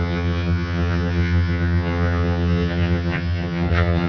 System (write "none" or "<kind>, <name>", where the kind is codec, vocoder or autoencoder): vocoder, HiFi-GAN